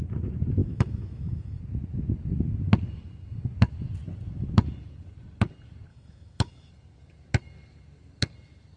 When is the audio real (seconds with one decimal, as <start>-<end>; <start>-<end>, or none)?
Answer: 0.0-0.6; 1.6-5.9; 6.7-8.8